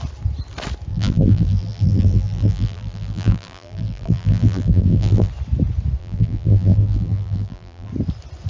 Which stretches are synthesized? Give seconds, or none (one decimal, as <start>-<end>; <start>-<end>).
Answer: 0.9-5.3; 6.0-7.9